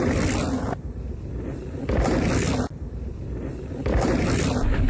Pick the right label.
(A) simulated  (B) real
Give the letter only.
B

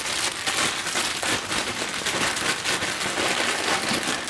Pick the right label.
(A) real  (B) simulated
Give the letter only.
A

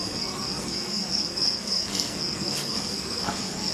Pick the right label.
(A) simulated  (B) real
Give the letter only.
A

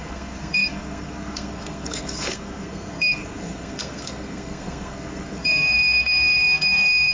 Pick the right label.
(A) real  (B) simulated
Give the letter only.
B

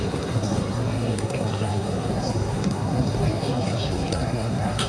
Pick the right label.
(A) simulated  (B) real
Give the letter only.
A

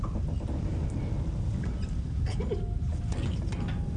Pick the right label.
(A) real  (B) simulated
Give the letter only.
A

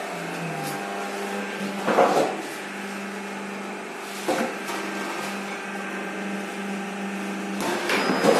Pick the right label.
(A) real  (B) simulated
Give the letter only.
A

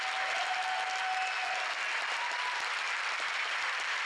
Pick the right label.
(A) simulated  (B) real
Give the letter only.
B